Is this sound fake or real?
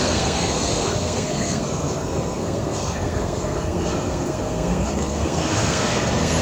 fake